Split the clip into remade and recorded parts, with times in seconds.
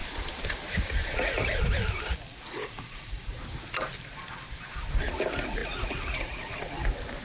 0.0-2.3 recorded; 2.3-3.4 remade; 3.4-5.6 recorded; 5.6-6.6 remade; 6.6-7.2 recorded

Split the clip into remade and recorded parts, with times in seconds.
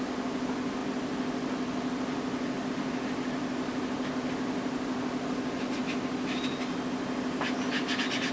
0.0-8.3 recorded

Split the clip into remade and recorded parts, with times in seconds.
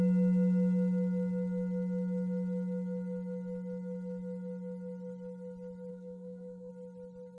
0.0-5.9 recorded; 5.9-6.7 remade; 6.7-7.4 recorded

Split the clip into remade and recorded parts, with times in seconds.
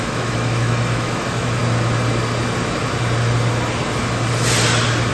0.0-1.6 remade; 1.6-5.1 recorded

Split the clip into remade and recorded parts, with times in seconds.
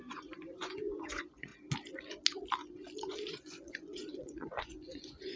0.0-1.5 remade; 1.5-3.0 recorded; 3.0-5.4 remade